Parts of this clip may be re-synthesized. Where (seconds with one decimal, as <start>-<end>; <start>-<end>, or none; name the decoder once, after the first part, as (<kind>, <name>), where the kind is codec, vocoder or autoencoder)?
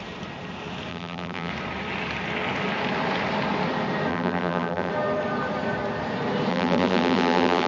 0.9-1.5 (vocoder, BigVGAN v2); 4.1-4.9; 6.5-7.7